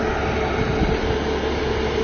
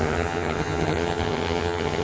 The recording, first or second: first